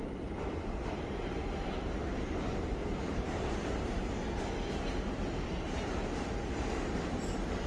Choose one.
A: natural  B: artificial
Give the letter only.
B